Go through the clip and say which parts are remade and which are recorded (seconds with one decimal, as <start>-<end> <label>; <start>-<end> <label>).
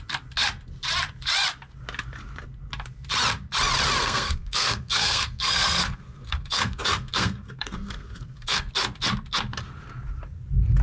0.0-4.0 recorded; 4.0-8.7 remade; 8.7-10.8 recorded